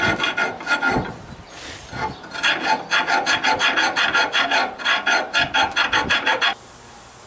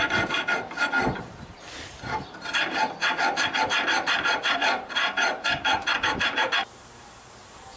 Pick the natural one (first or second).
first